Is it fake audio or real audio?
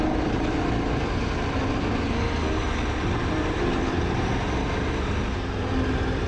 real